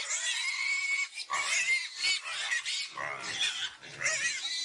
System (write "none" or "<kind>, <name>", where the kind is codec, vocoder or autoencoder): none